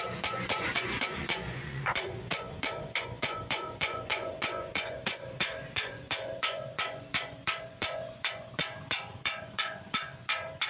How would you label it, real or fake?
fake